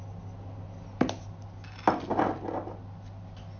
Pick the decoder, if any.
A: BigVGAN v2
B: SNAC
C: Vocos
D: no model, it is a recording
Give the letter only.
D